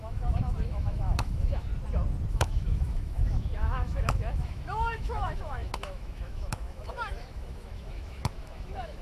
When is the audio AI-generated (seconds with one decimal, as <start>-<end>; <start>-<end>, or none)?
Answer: 0.0-1.7; 2.3-9.0